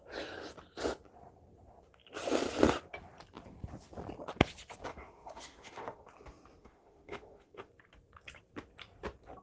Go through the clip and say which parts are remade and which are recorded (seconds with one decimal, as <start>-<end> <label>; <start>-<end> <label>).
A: 0.0-4.9 recorded; 4.9-6.1 remade; 6.1-6.6 recorded; 6.6-7.7 remade; 7.7-9.4 recorded